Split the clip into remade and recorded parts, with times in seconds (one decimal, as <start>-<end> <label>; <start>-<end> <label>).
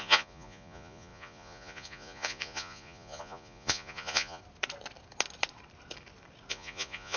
0.0-4.4 remade; 4.4-6.5 recorded; 6.5-7.2 remade